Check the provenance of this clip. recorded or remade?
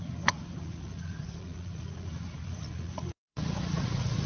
remade